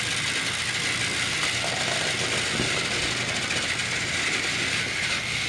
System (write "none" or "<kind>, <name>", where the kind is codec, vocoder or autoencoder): none